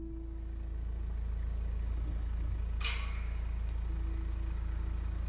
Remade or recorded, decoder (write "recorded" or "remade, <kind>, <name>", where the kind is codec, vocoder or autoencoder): recorded